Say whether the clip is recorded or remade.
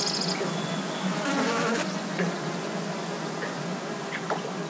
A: remade